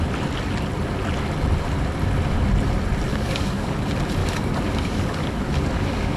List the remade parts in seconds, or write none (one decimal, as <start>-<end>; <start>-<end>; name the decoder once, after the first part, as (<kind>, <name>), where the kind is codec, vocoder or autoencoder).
3.1-3.7 (codec, DAC); 4.2-6.2